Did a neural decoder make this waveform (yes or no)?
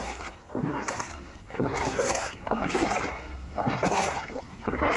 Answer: yes